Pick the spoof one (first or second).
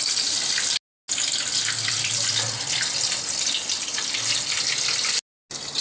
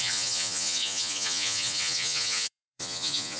second